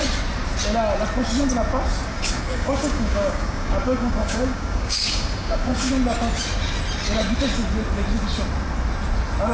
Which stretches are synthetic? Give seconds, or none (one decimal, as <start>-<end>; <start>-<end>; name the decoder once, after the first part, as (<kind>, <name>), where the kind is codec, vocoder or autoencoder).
2.1-5.9 (codec, DAC)